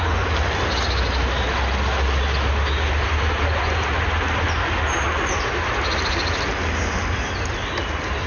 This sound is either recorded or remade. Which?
recorded